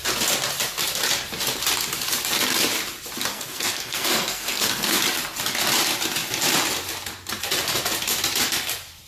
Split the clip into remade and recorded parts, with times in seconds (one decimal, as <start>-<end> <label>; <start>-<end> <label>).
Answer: 0.0-3.3 recorded; 3.3-5.0 remade; 5.0-9.1 recorded